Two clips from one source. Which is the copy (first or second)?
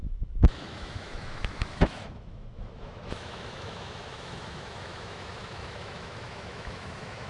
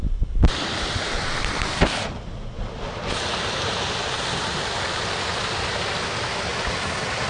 first